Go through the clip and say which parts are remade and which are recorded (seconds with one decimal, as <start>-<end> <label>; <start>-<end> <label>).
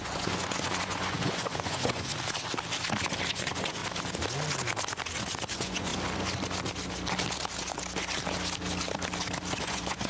0.0-2.1 remade; 2.1-3.3 recorded; 3.3-3.8 remade; 3.8-5.5 recorded; 5.5-5.9 remade; 5.9-9.6 recorded; 9.6-10.1 remade